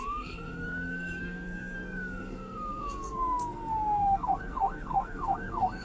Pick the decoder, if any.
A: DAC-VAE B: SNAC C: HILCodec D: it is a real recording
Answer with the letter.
B